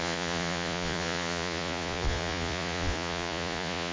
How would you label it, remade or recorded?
remade